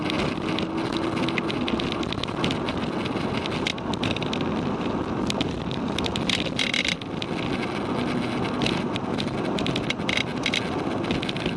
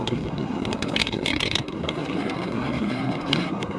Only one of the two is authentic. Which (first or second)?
first